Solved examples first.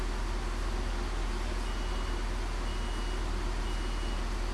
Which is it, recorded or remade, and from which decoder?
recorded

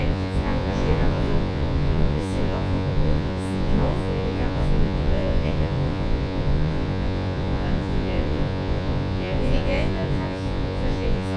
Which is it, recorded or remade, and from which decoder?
remade, vocoder, Vocos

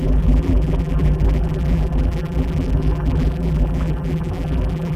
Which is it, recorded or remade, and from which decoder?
remade, vocoder, BigVGAN v2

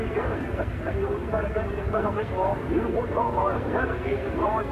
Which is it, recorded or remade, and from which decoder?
remade, codec, SNAC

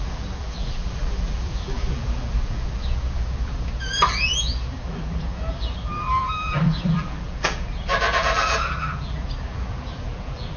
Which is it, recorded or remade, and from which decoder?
remade, vocoder, BigVGAN v2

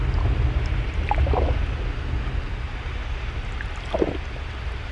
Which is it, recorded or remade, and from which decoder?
recorded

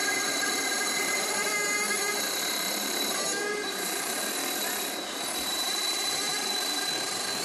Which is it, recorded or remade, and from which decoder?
remade, vocoder, BigVGAN v2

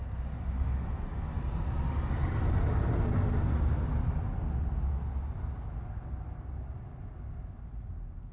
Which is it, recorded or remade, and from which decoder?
recorded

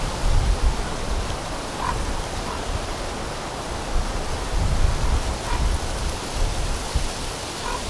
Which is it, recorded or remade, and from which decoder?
recorded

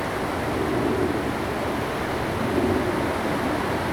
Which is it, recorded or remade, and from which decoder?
recorded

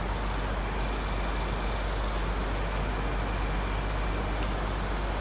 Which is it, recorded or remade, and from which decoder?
recorded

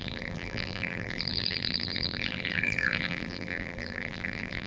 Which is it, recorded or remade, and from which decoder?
remade, vocoder, BigVGAN v2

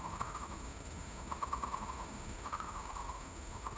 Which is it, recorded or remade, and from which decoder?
remade, autoencoder, DAC-VAE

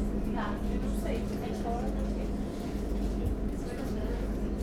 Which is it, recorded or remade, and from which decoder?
recorded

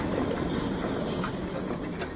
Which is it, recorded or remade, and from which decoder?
recorded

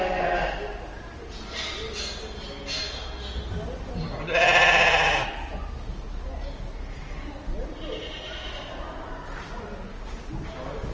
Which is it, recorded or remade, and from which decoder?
recorded